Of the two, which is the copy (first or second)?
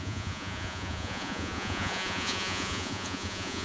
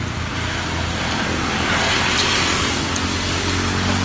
first